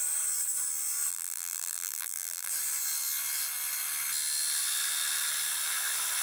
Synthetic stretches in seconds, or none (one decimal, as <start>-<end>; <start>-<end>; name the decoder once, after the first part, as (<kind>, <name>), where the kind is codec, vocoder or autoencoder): 1.1-2.5 (vocoder, BigVGAN v2)

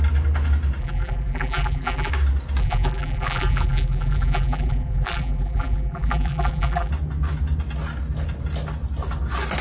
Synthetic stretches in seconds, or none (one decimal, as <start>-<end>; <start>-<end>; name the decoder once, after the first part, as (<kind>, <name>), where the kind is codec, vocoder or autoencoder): 0.8-2.1 (vocoder, BigVGAN v2); 2.6-6.9